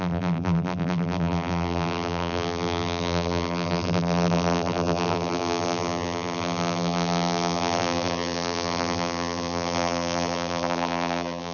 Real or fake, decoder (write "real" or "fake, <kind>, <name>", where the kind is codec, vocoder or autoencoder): fake, vocoder, BigVGAN v2